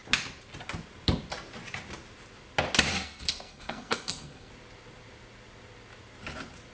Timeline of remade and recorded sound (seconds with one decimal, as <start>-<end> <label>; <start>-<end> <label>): 0.0-2.9 recorded; 2.9-4.5 remade; 4.5-6.7 recorded